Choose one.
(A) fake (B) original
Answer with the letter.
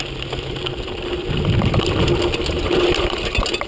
B